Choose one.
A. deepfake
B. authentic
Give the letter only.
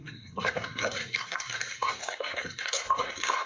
A